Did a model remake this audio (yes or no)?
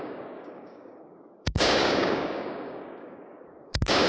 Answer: yes